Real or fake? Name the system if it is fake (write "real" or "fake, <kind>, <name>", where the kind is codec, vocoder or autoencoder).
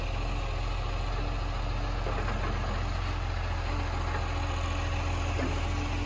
real